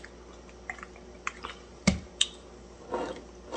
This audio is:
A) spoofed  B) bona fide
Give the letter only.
B